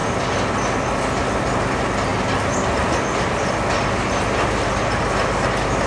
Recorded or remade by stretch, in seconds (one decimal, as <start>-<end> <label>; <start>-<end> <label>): 0.0-5.9 recorded